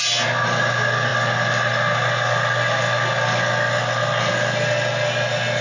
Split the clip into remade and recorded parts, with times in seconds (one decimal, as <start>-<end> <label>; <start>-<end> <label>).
0.0-5.6 recorded